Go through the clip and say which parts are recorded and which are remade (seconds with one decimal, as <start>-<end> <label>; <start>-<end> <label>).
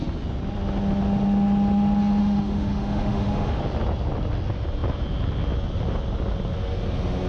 0.0-2.2 recorded; 2.2-3.6 remade; 3.6-7.3 recorded